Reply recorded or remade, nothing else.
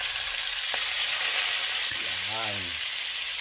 recorded